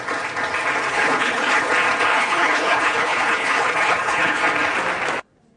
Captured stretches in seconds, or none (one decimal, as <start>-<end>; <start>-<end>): 0.0-0.9; 1.7-2.1; 4.4-5.6